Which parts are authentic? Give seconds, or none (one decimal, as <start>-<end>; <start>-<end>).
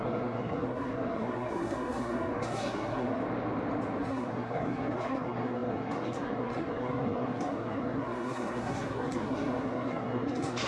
3.2-4.0